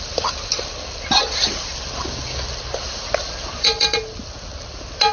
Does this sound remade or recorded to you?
recorded